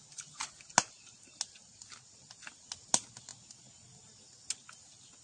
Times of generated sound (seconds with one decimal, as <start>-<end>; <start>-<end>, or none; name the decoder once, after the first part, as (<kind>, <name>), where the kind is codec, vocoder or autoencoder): none